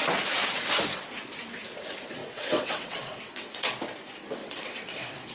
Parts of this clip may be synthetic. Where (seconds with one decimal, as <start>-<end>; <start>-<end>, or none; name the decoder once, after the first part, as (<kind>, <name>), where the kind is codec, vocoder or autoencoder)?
2.2-3.7 (vocoder, WaveNeXt); 4.4-5.3

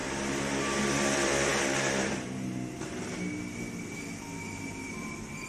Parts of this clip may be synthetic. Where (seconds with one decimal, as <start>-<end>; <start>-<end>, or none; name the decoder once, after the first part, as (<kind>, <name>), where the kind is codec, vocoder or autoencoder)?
0.8-1.5 (vocoder, BigVGAN v2); 4.8-5.5

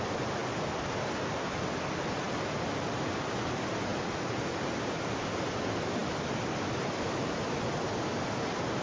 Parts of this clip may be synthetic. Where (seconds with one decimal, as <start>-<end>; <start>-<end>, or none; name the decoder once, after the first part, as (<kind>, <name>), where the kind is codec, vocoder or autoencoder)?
none

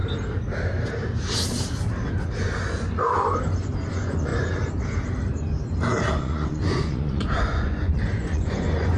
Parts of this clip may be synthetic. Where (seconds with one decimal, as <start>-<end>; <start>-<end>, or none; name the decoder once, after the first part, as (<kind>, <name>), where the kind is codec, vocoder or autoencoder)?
3.9-4.3 (vocoder, Vocos); 6.1-9.0

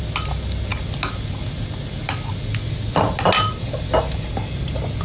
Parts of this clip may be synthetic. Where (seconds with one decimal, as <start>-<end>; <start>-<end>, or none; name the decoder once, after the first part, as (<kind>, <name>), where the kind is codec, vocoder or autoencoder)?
none